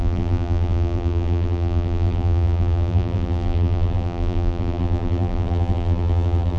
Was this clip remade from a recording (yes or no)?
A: yes